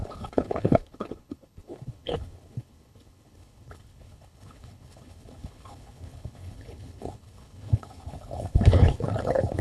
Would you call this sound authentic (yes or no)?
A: no